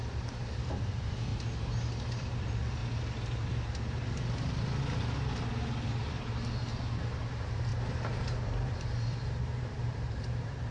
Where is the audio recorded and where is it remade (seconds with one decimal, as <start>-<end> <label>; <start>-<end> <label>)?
0.0-1.3 remade; 1.3-2.0 recorded; 2.0-2.8 remade; 2.8-5.9 recorded; 5.9-6.7 remade; 6.7-7.3 recorded; 7.3-10.7 remade